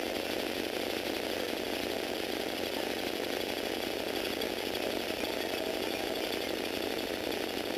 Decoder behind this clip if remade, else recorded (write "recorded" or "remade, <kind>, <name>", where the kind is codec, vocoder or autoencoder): recorded